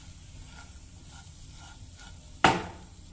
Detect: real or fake real